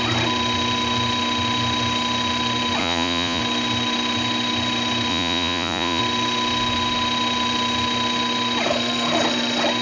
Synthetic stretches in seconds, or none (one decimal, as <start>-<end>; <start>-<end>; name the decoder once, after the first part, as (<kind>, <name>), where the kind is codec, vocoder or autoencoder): 2.8-3.4 (vocoder, Vocos); 5.1-6.0